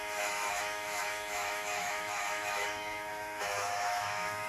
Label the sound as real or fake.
fake